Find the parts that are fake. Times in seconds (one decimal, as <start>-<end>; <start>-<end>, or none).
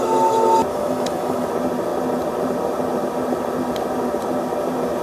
0.7-1.5